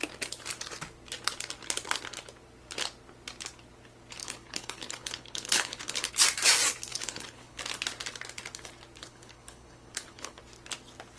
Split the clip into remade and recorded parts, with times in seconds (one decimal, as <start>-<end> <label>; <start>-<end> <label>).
0.0-4.2 recorded; 4.2-6.1 remade; 6.1-6.9 recorded; 6.9-7.6 remade; 7.6-9.0 recorded; 9.0-10.4 remade; 10.4-11.2 recorded